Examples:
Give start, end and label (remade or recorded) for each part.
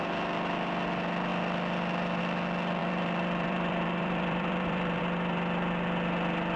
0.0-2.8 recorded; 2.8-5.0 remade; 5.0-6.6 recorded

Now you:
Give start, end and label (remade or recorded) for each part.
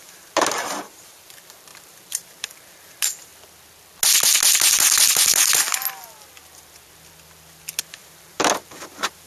0.0-3.3 remade; 3.3-7.9 recorded; 7.9-9.3 remade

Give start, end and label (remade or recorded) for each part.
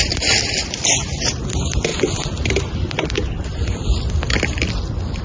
0.0-5.2 remade